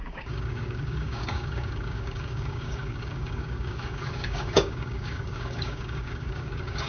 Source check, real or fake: fake